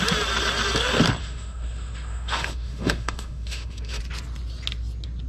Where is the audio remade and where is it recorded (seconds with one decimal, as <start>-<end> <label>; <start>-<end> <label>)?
0.0-1.2 recorded; 1.2-4.0 remade; 4.0-5.3 recorded